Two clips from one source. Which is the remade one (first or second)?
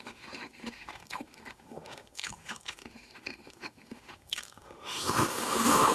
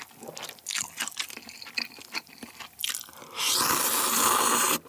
first